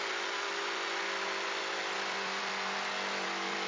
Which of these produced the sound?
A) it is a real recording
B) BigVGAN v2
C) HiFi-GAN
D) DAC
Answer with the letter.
A